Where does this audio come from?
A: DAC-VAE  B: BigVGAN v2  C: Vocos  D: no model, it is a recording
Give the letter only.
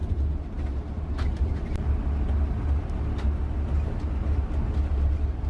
D